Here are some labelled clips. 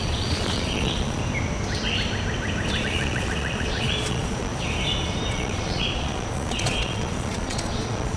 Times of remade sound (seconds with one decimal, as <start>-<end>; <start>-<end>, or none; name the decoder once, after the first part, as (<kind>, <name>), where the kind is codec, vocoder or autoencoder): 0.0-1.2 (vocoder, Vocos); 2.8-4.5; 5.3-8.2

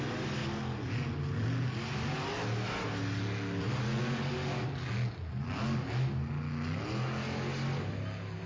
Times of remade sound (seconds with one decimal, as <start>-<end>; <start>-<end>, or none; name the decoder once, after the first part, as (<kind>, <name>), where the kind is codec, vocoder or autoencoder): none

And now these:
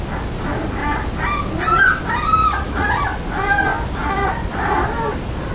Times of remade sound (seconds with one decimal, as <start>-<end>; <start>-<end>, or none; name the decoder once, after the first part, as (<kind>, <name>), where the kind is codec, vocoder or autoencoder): 2.4-3.0 (vocoder, Vocos)